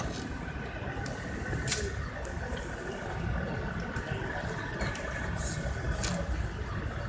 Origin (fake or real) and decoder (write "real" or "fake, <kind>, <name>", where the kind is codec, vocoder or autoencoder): real